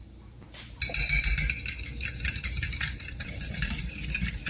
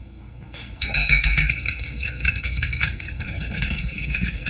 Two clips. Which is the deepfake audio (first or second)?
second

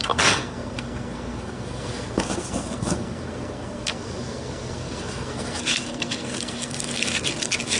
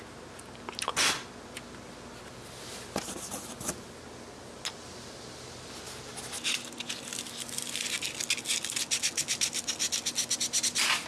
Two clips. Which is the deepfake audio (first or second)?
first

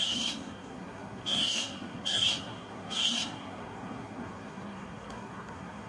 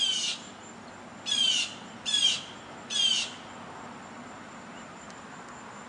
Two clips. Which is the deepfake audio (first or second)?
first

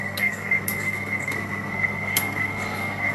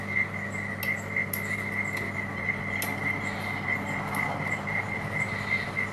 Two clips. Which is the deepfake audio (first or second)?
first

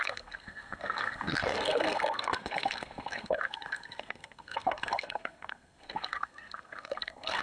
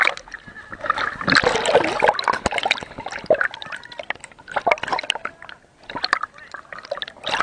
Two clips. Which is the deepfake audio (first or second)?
first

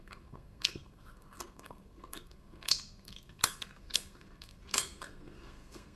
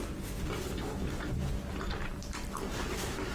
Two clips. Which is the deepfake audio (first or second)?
first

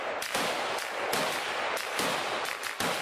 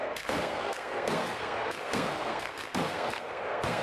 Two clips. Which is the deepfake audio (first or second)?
second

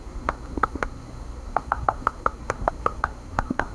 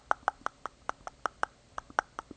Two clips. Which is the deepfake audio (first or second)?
first